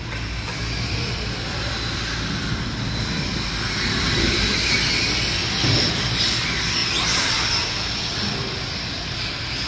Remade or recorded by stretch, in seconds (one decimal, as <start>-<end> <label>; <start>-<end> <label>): 0.0-9.7 recorded

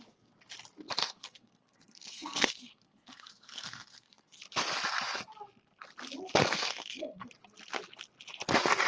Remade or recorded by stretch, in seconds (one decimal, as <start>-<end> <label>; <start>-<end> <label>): 0.0-1.0 recorded; 1.0-4.4 remade; 4.4-6.4 recorded; 6.4-7.3 remade; 7.3-8.9 recorded

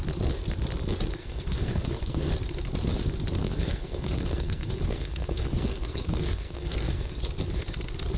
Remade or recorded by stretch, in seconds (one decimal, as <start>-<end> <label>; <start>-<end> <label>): 0.0-1.2 recorded; 1.2-2.3 remade; 2.3-3.4 recorded; 3.4-7.2 remade; 7.2-8.2 recorded

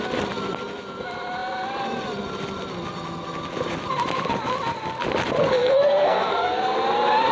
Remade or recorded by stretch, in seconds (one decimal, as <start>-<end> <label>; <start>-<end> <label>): 0.0-5.4 recorded; 5.4-6.6 remade; 6.6-7.3 recorded

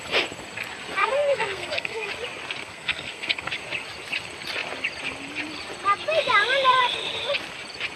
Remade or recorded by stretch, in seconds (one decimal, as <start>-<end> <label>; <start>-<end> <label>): 0.0-1.0 recorded; 1.0-2.1 remade; 2.1-2.6 recorded; 2.6-3.5 remade; 3.5-8.0 recorded

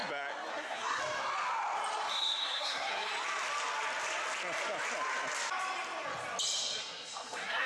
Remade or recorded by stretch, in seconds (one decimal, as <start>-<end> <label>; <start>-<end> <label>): 0.0-0.5 recorded; 0.5-1.0 remade; 1.0-2.1 recorded; 2.1-3.1 remade; 3.1-6.8 recorded; 6.8-7.7 remade

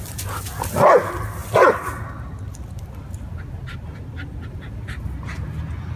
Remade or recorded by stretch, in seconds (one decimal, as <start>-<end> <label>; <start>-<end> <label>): 0.0-6.0 recorded